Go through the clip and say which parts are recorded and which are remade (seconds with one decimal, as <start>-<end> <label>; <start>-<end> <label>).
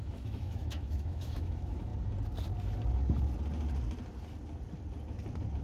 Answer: 0.0-1.9 remade; 1.9-5.6 recorded